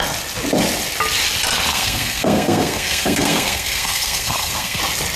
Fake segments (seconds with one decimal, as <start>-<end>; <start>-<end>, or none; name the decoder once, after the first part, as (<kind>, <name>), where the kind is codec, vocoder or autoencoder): 1.7-4.8 (codec, SNAC)